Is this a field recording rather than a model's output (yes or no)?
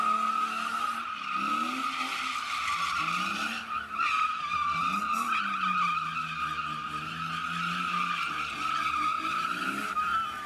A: yes